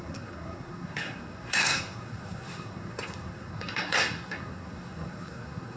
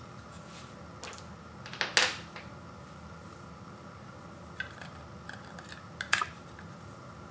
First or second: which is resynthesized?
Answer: first